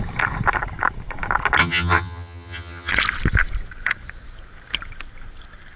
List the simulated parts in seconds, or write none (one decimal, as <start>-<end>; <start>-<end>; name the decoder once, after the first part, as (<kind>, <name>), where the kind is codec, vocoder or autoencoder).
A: 1.6-2.9 (vocoder, HiFi-GAN)